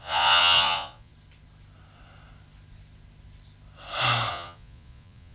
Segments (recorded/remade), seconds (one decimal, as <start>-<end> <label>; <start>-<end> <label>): 0.0-1.1 remade; 1.1-4.3 recorded; 4.3-5.3 remade